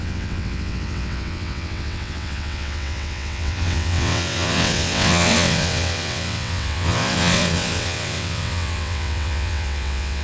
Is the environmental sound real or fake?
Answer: fake